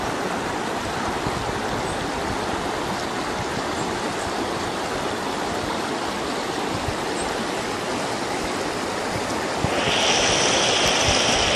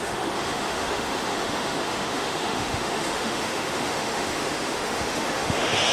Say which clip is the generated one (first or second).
second